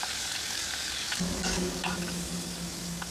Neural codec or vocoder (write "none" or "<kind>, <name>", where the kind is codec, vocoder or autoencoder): codec, DAC